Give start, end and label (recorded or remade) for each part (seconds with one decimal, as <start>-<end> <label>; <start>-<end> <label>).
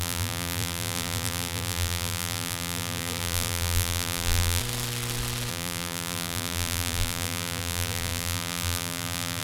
0.0-4.6 remade; 4.6-5.5 recorded; 5.5-9.4 remade